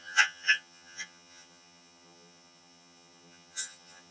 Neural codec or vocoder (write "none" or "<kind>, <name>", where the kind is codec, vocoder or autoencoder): vocoder, HiFi-GAN